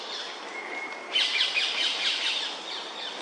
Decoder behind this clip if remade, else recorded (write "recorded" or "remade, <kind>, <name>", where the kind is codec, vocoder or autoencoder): recorded